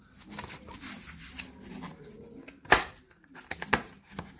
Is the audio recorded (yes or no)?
yes